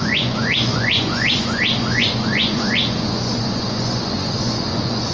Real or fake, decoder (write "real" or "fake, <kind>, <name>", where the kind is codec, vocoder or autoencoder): fake, vocoder, Vocos